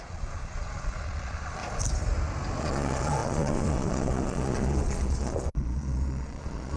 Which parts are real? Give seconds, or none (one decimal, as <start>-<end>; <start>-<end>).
1.6-2.6